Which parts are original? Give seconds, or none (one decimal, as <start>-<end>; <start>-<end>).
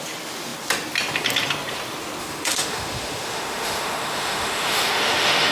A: 0.0-2.2